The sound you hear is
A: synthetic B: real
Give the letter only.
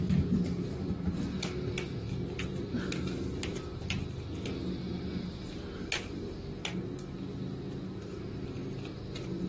B